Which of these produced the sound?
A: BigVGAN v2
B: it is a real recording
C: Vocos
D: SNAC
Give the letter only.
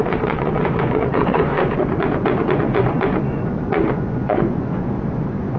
C